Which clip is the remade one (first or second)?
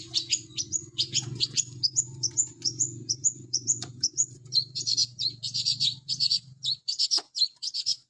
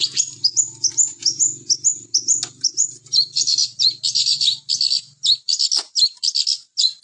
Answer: first